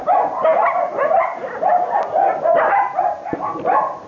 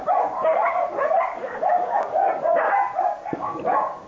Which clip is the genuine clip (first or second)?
first